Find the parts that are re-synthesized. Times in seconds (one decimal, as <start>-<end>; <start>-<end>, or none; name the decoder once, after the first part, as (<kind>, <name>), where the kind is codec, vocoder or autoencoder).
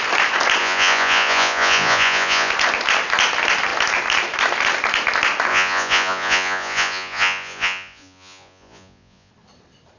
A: 0.6-2.5 (vocoder, Vocos); 5.5-9.3